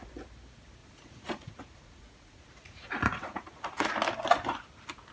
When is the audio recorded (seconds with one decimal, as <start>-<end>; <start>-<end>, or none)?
0.0-0.8; 3.9-5.1